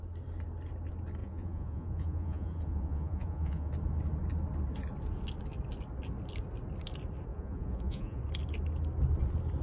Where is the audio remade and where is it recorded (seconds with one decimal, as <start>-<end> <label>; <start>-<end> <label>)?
0.0-1.2 recorded; 1.2-3.7 remade; 3.7-7.3 recorded; 7.3-8.2 remade; 8.2-9.6 recorded